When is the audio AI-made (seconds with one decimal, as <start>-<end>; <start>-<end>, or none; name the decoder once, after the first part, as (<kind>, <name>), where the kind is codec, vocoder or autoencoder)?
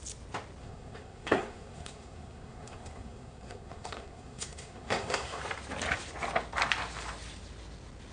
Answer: 0.6-5.4 (codec, SNAC)